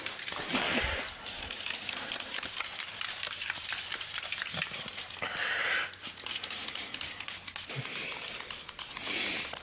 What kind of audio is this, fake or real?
fake